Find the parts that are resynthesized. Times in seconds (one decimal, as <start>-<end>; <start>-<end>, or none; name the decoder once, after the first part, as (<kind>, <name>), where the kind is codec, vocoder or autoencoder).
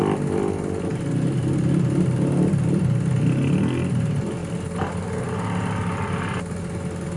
none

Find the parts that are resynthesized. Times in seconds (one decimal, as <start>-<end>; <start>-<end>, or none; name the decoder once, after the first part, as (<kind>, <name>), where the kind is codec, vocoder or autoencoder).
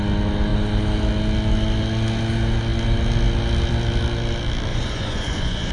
4.7-5.7 (vocoder, Vocos)